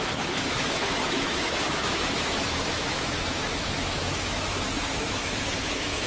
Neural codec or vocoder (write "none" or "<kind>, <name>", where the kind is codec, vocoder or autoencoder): autoencoder, DAC-VAE